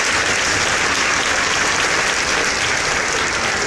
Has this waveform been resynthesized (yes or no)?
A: no